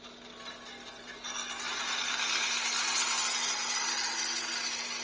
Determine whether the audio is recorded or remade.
recorded